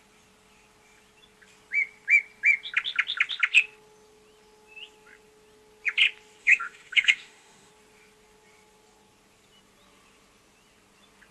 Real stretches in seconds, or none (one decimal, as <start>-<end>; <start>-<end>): 0.0-6.4; 7.7-11.3